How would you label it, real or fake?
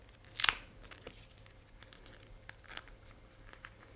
real